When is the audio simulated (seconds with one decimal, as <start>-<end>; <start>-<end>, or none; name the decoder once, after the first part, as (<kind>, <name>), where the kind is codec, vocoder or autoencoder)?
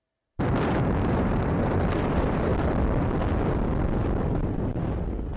0.0-2.5 (vocoder, BigVGAN v2); 4.2-5.4